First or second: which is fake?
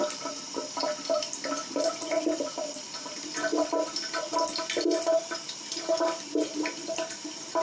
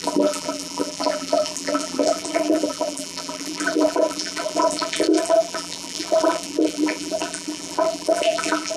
second